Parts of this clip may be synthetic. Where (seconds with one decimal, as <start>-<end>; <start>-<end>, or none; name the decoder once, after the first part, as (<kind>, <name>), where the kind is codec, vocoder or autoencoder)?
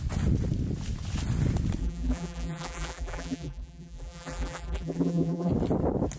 1.8-5.5 (vocoder, BigVGAN v2)